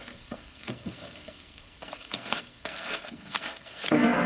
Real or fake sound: fake